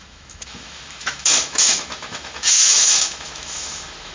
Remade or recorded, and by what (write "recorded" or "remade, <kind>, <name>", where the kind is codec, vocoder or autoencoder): remade, autoencoder, DAC-VAE